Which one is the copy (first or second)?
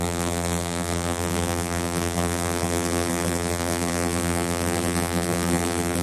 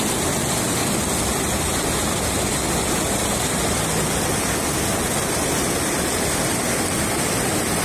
first